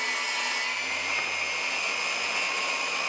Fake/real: real